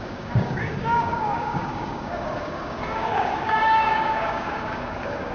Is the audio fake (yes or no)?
yes